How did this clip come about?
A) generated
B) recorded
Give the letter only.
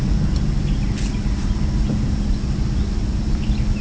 B